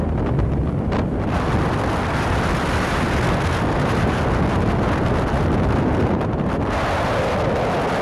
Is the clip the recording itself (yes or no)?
yes